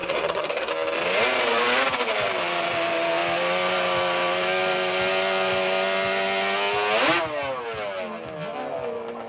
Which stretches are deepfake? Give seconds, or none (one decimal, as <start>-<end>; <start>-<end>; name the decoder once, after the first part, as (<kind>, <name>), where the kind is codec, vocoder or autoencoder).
0.0-0.7 (codec, SNAC)